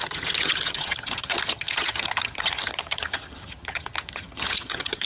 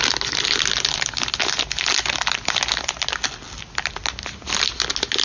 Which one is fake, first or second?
first